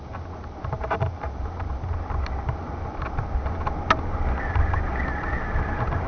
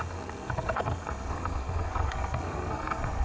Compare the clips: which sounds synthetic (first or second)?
second